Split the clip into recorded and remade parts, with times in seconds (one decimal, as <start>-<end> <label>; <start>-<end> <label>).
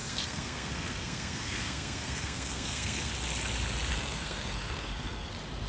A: 0.0-3.1 remade; 3.1-3.9 recorded; 3.9-5.3 remade; 5.3-5.7 recorded